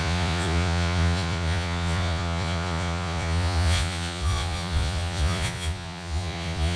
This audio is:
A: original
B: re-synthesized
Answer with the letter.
B